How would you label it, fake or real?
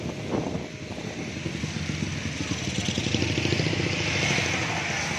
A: real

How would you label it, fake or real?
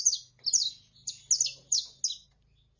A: real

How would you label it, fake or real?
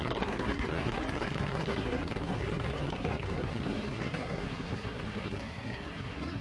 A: fake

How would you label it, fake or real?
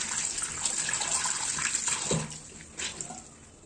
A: real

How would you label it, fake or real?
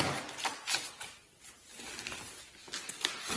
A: real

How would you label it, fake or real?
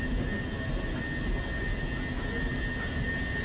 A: real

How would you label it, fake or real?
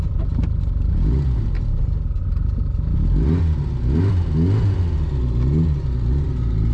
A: real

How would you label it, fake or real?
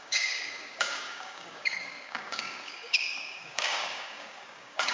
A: fake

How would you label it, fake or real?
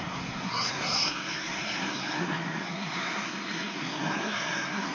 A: fake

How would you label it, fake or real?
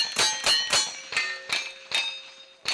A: real